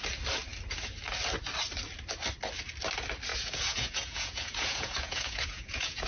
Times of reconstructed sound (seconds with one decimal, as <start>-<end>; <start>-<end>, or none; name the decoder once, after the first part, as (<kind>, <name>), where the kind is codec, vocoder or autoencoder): 3.3-6.1 (vocoder, Vocos)